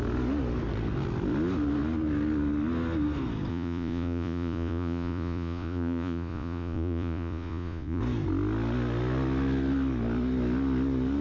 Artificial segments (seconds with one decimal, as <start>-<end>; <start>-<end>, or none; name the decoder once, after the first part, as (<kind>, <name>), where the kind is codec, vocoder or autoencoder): 3.5-8.0 (vocoder, Vocos)